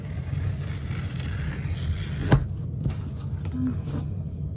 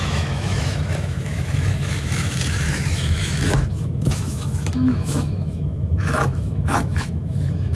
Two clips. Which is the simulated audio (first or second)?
second